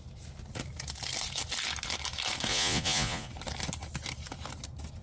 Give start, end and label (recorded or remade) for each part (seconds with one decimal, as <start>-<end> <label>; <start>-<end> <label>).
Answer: 0.0-2.5 recorded; 2.5-3.3 remade; 3.3-5.0 recorded

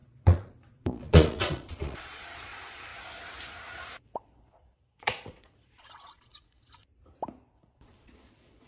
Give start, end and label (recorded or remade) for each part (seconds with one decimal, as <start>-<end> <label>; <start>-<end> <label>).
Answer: 0.0-2.9 remade; 2.9-4.0 recorded; 4.0-6.8 remade; 6.8-7.4 recorded; 7.4-8.7 remade

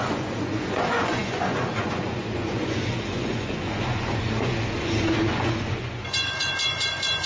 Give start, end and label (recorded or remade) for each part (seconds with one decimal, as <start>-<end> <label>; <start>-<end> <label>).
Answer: 0.0-7.3 remade

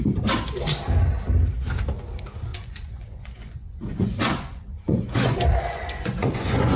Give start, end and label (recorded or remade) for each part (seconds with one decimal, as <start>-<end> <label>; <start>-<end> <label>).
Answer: 0.0-2.5 recorded; 2.5-6.8 remade

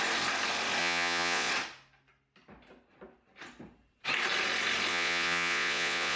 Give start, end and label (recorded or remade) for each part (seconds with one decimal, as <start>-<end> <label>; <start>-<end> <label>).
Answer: 0.0-0.8 recorded; 0.8-1.5 remade; 1.5-4.9 recorded; 4.9-6.2 remade

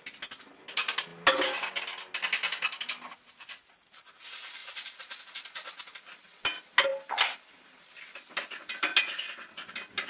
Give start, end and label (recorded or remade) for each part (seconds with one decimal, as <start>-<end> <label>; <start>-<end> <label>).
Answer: 0.0-10.1 recorded

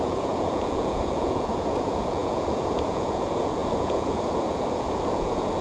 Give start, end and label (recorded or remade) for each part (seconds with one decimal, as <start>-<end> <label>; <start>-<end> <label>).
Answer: 0.0-5.6 remade